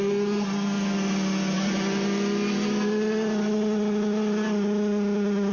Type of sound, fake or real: real